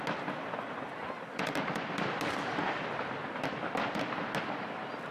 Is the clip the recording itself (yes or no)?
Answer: yes